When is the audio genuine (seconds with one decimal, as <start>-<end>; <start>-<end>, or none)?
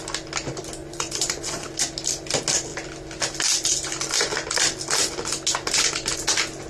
0.0-0.8; 1.7-6.7